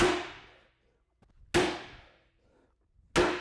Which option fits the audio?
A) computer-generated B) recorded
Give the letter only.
B